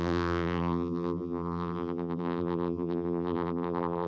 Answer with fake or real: fake